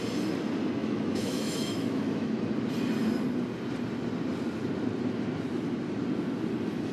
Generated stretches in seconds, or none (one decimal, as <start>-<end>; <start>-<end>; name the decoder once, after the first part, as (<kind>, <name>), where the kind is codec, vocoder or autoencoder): 0.8-2.3 (autoencoder, DAC-VAE)